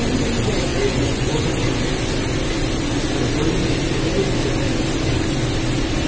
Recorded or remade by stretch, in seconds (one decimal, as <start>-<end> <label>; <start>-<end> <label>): 0.0-0.7 recorded; 0.7-1.4 remade; 1.4-6.1 recorded